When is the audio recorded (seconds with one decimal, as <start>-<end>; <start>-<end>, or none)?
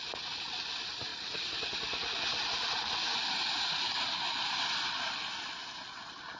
0.0-6.4